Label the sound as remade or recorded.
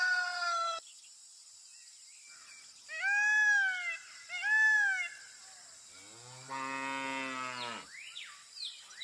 recorded